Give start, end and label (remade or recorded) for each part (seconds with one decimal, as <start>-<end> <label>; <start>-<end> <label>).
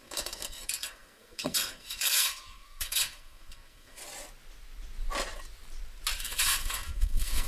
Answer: 0.0-4.0 remade; 4.0-6.2 recorded; 6.2-7.5 remade